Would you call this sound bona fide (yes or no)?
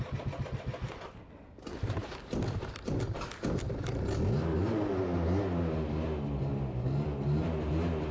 yes